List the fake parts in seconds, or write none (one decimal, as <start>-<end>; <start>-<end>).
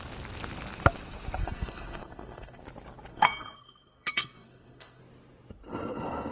1.4-2.6; 3.1-5.0